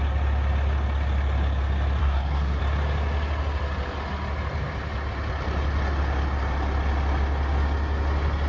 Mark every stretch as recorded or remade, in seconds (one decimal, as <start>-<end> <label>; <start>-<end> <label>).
0.0-2.0 recorded; 2.0-2.6 remade; 2.6-8.5 recorded